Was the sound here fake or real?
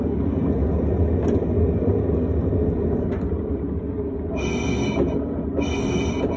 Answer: real